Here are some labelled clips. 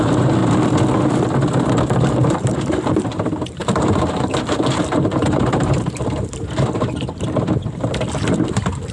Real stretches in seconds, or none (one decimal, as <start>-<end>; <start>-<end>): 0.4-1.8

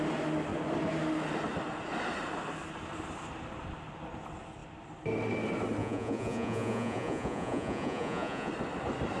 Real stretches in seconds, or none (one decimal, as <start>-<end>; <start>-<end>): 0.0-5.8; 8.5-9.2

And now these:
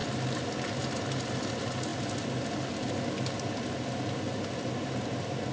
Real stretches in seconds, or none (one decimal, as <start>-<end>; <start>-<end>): 0.0-5.5

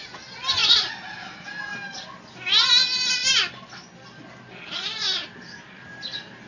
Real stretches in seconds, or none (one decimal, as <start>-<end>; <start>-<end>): 0.0-6.5

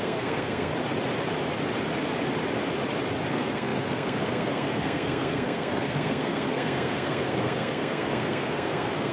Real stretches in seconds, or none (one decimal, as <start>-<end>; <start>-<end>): 0.7-3.3